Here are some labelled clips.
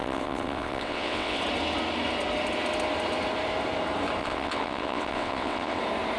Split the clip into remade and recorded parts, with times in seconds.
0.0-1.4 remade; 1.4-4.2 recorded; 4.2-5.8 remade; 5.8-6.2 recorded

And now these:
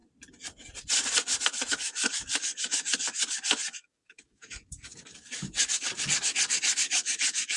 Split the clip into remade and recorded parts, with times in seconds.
0.0-1.7 recorded; 1.7-7.6 remade